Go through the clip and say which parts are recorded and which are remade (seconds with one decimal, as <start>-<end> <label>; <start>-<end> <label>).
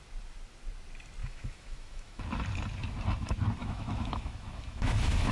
0.0-1.2 recorded; 1.2-2.2 remade; 2.2-3.6 recorded; 3.6-5.3 remade